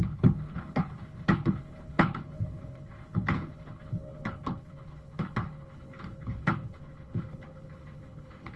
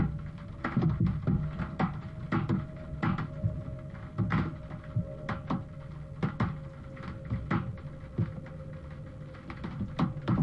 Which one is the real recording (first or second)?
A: second